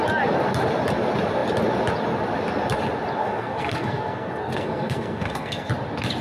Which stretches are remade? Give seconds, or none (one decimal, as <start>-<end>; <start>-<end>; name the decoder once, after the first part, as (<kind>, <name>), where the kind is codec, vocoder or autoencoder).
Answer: 3.2-5.7 (codec, SNAC)